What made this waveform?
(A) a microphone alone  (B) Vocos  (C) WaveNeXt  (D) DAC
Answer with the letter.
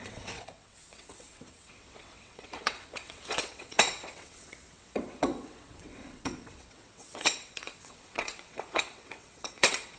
C